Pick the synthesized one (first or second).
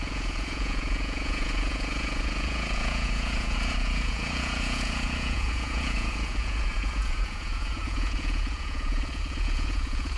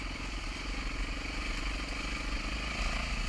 first